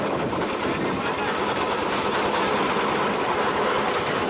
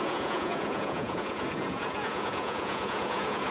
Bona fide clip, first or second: first